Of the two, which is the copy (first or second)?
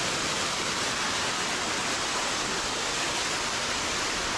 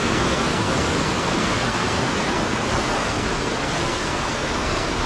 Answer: second